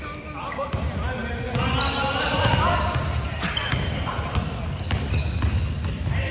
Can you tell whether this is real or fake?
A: real